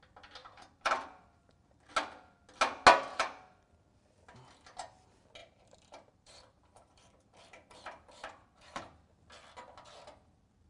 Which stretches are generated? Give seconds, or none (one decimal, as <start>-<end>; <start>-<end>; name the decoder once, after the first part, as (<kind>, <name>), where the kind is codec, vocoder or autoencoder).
0.4-1.9 (vocoder, BigVGAN v2); 3.1-3.7; 5.4-9.2